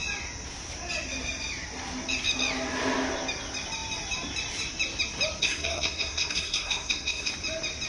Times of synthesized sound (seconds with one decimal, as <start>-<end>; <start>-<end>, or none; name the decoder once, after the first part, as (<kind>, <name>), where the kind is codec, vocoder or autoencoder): 5.4-7.3 (codec, SNAC)